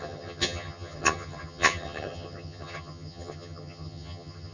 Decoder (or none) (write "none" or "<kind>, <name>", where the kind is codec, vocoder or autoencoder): vocoder, HiFi-GAN